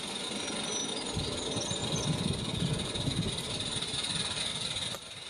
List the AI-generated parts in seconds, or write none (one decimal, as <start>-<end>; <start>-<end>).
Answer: 1.8-2.7; 4.5-5.3